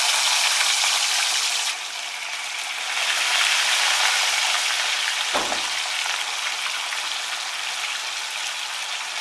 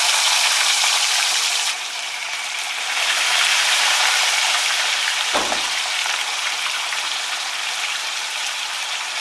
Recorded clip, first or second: first